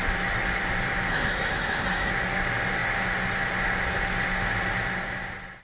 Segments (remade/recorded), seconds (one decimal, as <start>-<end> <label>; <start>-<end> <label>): 0.0-1.1 recorded; 1.1-2.1 remade; 2.1-5.6 recorded